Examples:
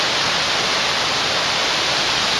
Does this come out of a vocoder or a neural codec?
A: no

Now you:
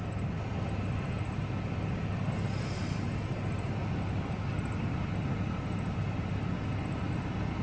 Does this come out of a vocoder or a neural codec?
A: no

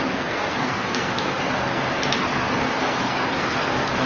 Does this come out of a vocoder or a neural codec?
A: yes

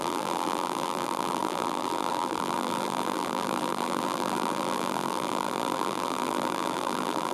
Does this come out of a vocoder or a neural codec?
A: yes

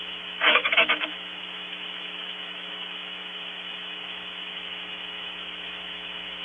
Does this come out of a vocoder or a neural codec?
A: yes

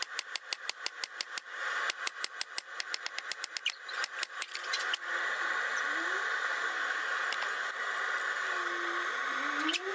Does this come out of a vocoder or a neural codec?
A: no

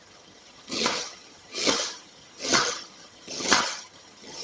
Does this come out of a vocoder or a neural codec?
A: yes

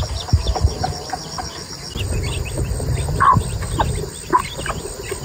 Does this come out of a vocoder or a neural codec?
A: no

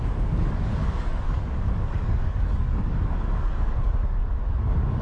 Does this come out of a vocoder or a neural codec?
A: yes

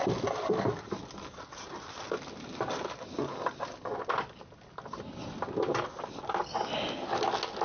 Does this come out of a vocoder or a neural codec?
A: no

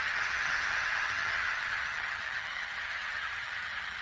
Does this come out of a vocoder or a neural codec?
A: yes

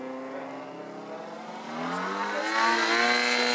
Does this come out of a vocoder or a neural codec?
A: no